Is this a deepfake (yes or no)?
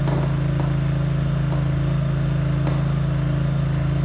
no